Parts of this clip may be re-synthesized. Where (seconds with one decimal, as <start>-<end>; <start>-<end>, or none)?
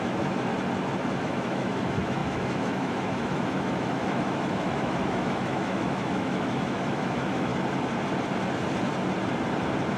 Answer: 0.0-0.5; 1.2-7.5